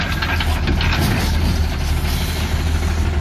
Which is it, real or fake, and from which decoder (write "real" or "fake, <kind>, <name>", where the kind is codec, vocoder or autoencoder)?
real